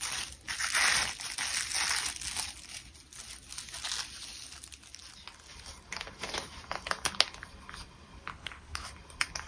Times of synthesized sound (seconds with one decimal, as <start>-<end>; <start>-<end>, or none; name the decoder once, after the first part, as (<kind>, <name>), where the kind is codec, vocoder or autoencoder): 8.3-8.9 (codec, HILCodec)

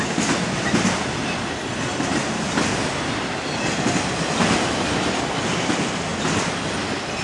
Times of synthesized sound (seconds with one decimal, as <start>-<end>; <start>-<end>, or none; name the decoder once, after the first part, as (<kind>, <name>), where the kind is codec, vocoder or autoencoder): none

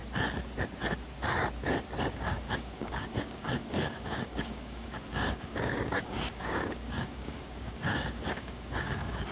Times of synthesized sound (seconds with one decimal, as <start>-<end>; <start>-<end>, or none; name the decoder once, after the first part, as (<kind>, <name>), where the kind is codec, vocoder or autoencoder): 2.1-9.3 (codec, DAC)

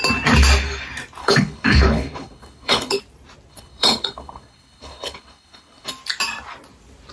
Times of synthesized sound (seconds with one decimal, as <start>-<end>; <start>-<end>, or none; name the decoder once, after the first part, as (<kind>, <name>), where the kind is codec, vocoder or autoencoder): 1.2-3.0 (codec, HILCodec); 3.5-5.9

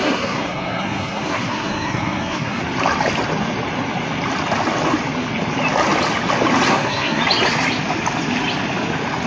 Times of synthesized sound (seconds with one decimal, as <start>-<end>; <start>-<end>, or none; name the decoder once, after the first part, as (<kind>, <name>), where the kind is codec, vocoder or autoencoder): 0.0-2.6 (codec, SNAC); 6.7-7.2

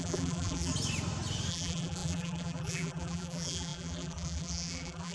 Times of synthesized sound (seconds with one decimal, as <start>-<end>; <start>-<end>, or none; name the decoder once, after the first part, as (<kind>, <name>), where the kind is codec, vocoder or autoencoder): 0.0-0.7 (vocoder, BigVGAN v2); 1.5-5.1

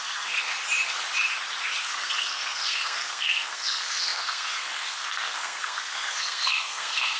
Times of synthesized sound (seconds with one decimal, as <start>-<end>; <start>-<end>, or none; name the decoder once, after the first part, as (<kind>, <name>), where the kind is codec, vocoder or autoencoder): 0.0-0.5 (codec, SNAC); 1.8-7.2

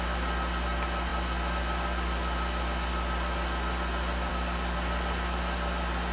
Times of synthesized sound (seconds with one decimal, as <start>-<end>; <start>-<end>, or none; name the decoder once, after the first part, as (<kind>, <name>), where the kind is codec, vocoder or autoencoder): none